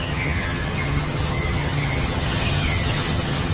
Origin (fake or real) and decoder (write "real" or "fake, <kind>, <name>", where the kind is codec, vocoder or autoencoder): fake, vocoder, HiFi-GAN